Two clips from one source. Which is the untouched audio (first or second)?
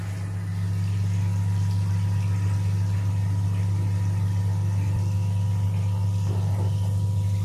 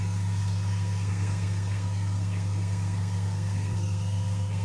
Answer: first